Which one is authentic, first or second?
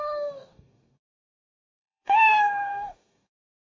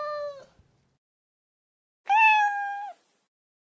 second